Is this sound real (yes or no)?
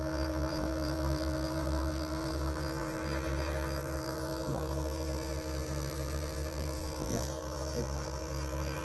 no